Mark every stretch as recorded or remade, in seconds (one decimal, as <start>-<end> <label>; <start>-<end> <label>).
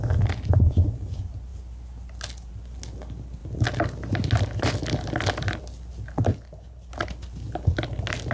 0.0-6.3 recorded; 6.3-6.9 remade; 6.9-8.3 recorded